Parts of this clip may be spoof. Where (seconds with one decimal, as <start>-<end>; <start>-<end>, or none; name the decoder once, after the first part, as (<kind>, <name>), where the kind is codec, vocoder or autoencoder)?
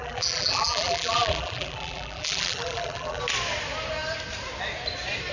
0.0-3.2 (vocoder, BigVGAN v2)